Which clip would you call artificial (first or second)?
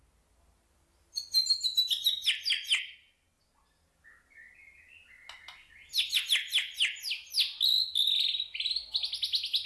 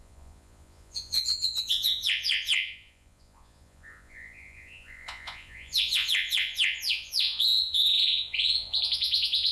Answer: second